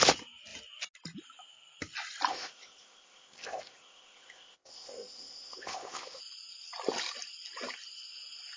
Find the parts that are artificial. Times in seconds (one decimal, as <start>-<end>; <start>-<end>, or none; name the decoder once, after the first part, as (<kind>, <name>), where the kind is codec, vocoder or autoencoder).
2.3-6.2 (codec, ZipCodec)